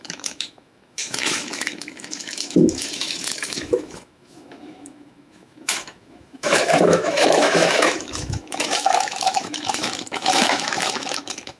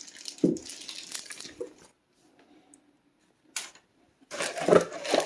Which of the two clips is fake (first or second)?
first